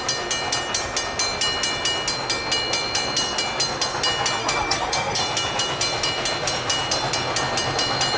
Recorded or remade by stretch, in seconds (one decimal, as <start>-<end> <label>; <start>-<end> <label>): 0.0-4.4 recorded; 4.4-5.2 remade; 5.2-8.2 recorded